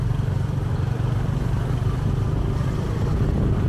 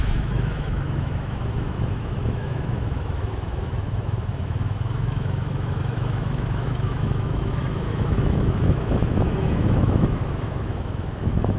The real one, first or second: first